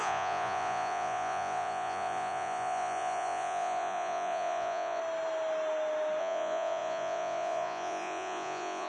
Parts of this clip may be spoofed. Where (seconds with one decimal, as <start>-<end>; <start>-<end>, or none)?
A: 0.0-5.0; 6.2-8.9